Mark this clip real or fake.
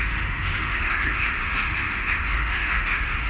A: fake